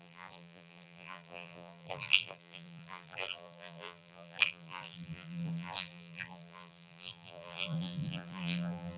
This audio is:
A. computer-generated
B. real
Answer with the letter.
A